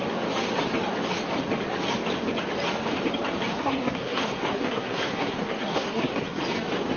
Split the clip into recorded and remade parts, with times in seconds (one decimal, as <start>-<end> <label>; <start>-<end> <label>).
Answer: 0.0-3.5 recorded; 3.5-6.4 remade; 6.4-7.0 recorded